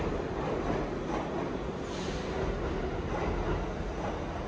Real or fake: real